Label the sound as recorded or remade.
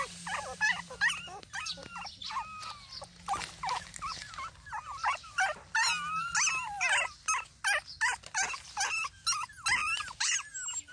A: recorded